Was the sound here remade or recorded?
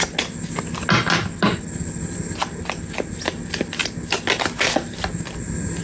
recorded